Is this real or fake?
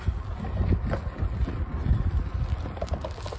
real